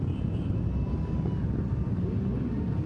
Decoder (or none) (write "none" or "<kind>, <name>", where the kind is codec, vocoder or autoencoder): none